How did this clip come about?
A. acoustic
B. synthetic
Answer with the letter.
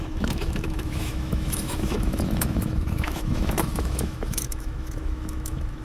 B